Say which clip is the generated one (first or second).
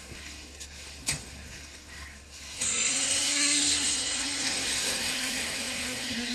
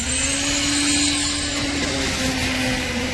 first